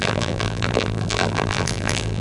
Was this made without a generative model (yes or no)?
no